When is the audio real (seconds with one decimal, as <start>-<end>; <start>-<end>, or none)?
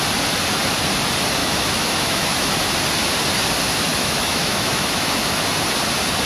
0.0-1.4; 2.5-3.9; 5.4-6.3